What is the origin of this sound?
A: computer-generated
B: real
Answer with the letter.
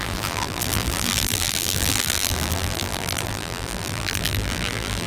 A